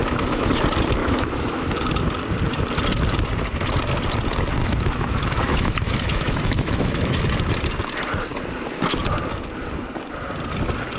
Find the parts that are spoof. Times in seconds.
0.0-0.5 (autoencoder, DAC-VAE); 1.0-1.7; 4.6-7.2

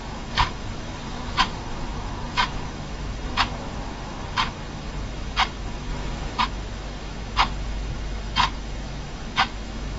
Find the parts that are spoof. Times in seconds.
0.0-10.0 (autoencoder, DAC-VAE)

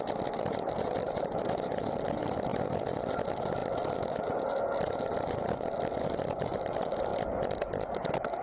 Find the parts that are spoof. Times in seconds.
none

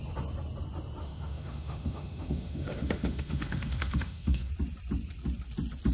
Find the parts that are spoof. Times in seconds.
1.0-4.5 (autoencoder, DAC-VAE)

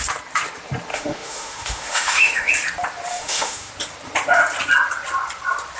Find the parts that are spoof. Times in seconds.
0.9-2.5 (autoencoder, DAC-VAE); 3.1-3.7

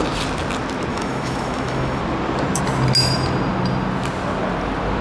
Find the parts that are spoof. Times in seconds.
0.9-2.0 (autoencoder, DAC-VAE)